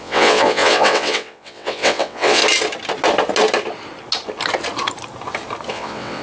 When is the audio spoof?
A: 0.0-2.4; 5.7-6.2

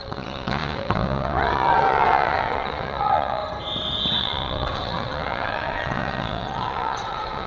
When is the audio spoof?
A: 0.0-3.4; 4.2-7.5

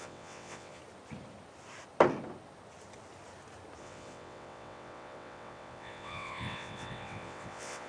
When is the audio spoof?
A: 0.0-0.8; 3.8-7.9

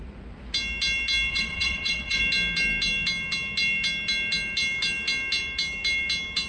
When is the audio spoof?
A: 1.3-2.2

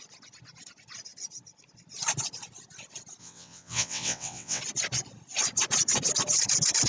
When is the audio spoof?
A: 3.2-4.6

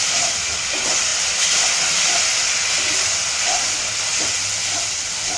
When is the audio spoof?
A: none

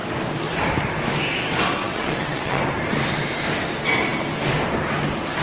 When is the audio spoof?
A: 1.8-2.6